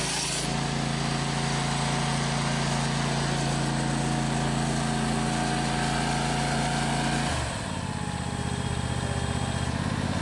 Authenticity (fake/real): real